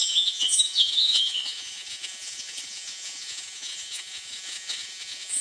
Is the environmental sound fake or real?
fake